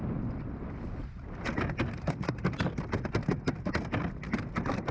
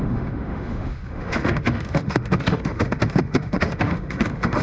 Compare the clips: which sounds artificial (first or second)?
second